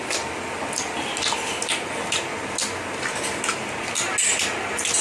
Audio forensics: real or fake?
real